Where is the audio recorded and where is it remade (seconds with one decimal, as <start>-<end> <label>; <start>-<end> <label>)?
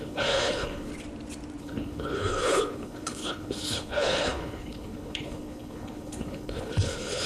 0.0-0.9 remade; 0.9-1.6 recorded; 1.6-7.3 remade